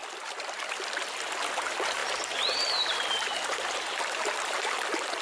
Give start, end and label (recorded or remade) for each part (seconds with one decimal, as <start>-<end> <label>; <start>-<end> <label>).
0.0-5.2 recorded